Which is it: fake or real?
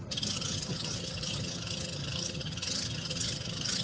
fake